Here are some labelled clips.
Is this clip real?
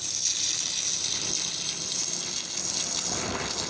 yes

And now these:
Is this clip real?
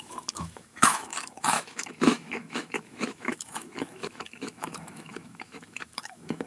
no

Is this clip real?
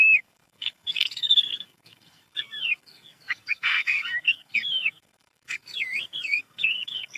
no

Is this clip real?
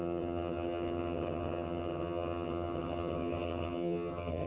no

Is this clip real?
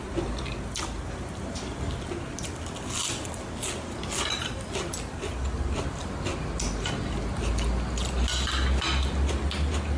yes